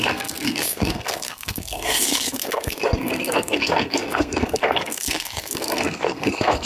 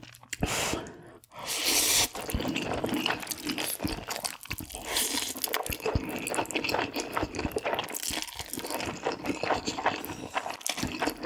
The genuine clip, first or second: second